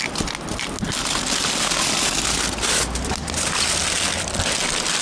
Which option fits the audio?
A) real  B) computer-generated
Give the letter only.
A